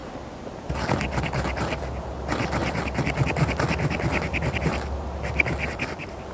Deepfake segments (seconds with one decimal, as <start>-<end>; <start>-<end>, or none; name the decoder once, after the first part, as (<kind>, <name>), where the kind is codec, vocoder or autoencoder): none